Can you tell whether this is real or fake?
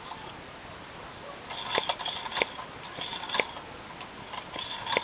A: real